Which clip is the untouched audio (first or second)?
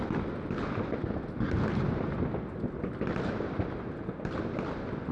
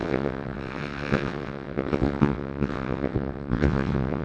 first